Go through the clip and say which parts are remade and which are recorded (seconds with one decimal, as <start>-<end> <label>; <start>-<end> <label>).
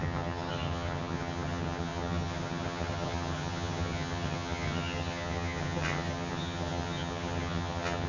0.0-8.1 remade